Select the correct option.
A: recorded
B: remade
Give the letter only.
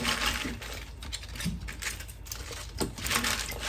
A